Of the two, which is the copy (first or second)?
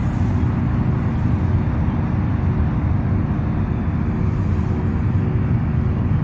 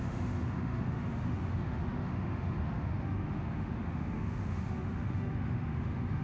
second